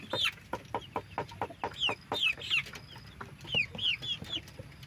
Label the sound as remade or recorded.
recorded